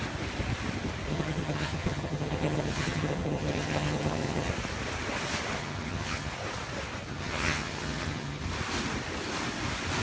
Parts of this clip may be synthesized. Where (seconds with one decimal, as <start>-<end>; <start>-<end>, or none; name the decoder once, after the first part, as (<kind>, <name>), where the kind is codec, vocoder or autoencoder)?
1.1-4.5 (vocoder, HiFi-GAN); 5.6-6.3; 7.1-8.4